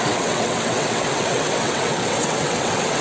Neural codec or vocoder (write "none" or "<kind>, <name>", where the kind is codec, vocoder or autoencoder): vocoder, WaveNeXt